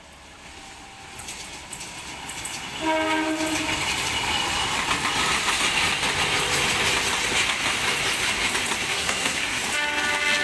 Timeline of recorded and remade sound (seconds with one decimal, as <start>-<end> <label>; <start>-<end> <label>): 0.0-8.9 recorded; 8.9-9.6 remade; 9.6-10.4 recorded